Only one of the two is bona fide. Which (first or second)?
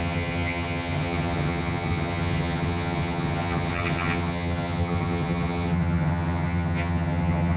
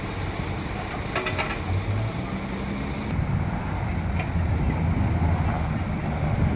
second